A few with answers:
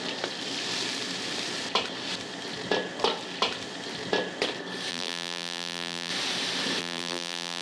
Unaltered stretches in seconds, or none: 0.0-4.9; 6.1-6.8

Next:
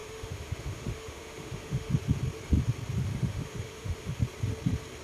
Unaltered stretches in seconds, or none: 1.9-3.1; 4.2-5.0

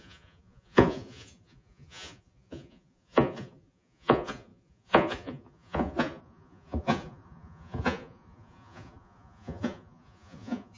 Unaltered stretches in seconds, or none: none

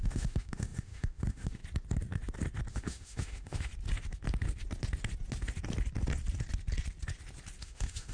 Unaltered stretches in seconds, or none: 1.6-2.7; 3.7-7.6

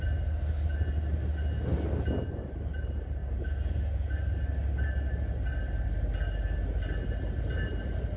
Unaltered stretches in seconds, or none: 0.0-3.2; 4.1-8.2

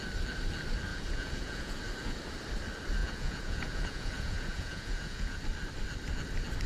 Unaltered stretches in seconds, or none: 0.0-0.9; 1.7-3.0; 5.4-6.7